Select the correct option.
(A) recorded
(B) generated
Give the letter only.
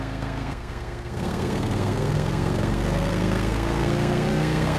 B